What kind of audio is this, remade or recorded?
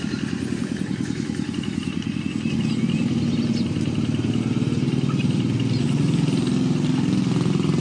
recorded